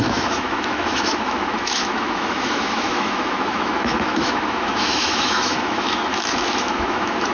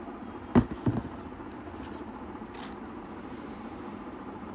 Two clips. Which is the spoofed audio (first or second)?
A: first